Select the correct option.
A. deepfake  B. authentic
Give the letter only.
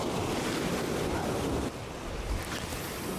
B